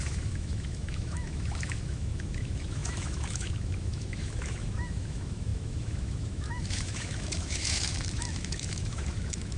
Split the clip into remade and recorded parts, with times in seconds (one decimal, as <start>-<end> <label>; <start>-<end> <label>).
0.0-9.6 remade